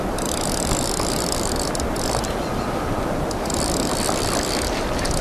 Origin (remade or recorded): recorded